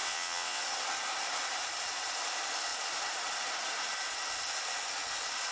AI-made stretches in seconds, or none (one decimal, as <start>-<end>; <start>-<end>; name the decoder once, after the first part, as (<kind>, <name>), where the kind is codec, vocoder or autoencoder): 0.0-0.6 (vocoder, WaveNeXt)